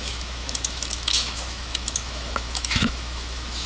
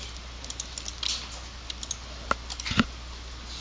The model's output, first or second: first